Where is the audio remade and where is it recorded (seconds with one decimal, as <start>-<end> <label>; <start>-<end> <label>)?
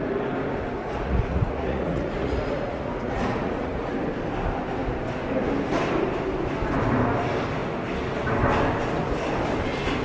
0.0-0.8 recorded; 0.8-3.9 remade; 3.9-10.0 recorded